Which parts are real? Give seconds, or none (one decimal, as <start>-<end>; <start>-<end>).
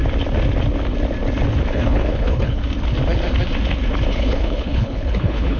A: 0.0-1.7; 2.6-4.1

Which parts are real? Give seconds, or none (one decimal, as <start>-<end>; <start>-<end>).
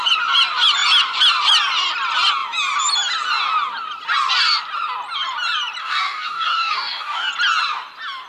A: 0.0-5.8; 7.3-8.3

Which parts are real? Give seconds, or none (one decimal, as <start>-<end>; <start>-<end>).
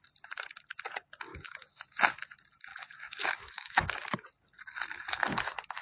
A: 0.0-1.3; 1.8-2.7; 3.8-5.8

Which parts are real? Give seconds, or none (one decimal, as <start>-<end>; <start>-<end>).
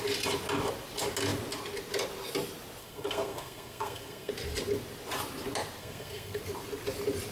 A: 0.0-2.8; 4.3-5.8; 6.4-7.3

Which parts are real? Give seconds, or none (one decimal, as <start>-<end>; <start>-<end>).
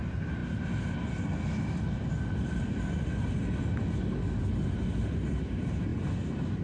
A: 0.0-6.6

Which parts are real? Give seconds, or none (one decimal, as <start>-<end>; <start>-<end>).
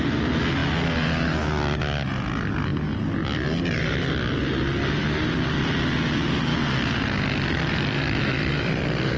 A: 0.0-9.2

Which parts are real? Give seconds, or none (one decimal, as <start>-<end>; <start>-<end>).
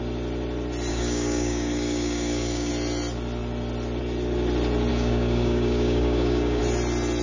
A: 0.0-0.9; 2.7-4.9; 6.6-7.2